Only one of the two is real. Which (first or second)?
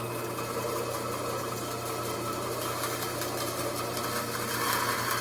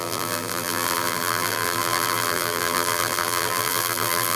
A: first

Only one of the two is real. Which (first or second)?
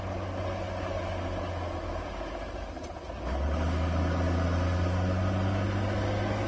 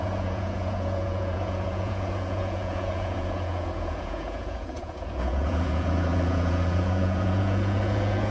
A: first